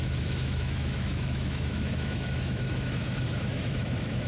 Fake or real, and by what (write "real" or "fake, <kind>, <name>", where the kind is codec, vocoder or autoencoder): fake, autoencoder, DAC-VAE